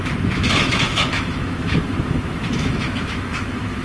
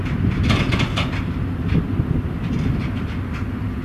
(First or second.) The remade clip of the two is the first